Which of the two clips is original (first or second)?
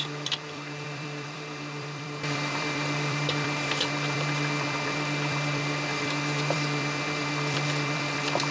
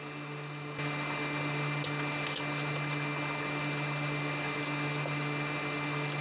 second